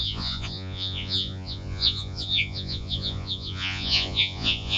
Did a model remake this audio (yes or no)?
yes